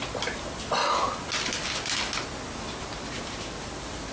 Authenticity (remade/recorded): recorded